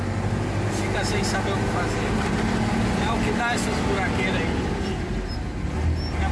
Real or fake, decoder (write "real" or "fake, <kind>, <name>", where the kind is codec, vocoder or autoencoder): real